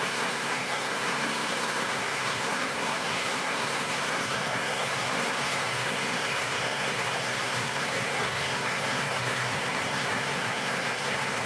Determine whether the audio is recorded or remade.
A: remade